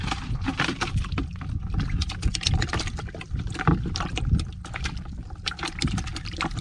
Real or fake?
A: fake